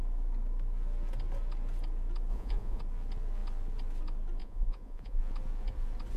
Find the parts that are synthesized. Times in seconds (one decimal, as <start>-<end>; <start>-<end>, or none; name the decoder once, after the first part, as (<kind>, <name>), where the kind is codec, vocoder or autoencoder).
2.3-2.8 (vocoder, Vocos); 4.4-5.2